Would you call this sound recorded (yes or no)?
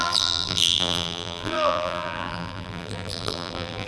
no